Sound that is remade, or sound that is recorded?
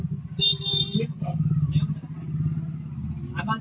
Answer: recorded